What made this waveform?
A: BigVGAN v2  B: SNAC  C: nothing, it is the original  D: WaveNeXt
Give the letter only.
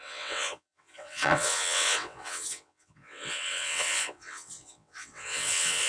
D